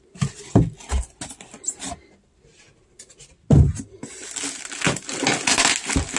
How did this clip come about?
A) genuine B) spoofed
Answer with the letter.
A